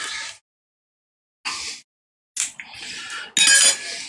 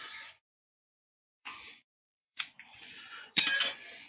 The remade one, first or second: second